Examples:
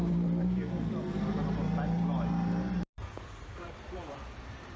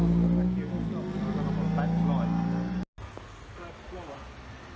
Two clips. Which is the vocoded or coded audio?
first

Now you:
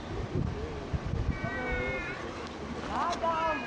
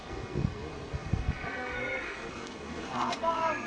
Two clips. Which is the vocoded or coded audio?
second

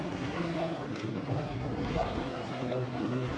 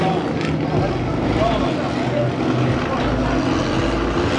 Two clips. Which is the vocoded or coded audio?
first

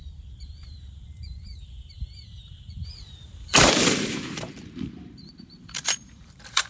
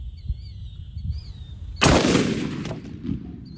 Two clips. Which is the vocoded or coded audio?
first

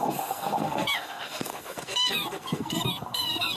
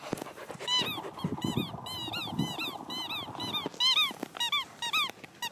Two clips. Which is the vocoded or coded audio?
first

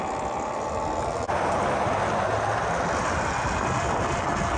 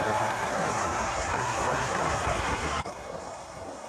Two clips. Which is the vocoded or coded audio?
second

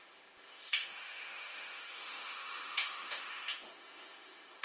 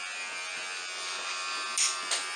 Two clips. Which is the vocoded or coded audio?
first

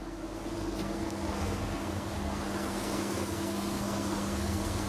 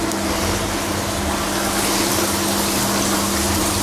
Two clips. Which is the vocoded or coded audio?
first